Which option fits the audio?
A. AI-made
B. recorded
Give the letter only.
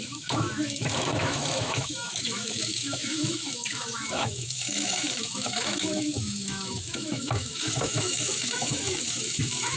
A